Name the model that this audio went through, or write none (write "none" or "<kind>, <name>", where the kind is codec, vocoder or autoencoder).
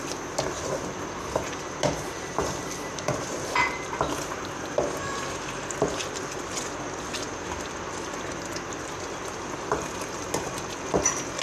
none